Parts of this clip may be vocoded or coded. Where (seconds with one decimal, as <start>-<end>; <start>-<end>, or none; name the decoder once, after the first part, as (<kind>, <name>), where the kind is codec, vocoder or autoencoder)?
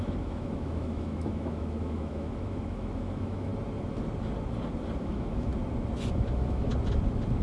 0.0-3.5 (autoencoder, DAC-VAE); 5.0-5.5; 6.1-6.7